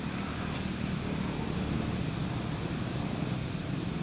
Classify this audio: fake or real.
real